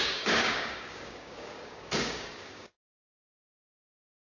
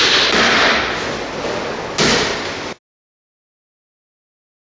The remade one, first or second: first